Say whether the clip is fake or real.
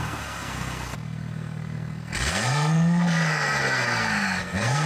fake